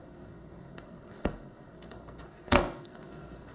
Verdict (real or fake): fake